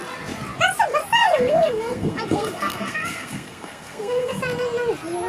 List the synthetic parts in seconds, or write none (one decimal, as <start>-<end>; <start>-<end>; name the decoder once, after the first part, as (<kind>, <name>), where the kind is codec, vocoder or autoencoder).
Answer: 1.2-4.4 (codec, SNAC)